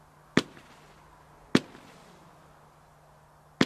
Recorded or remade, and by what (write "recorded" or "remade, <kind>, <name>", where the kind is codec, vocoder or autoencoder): recorded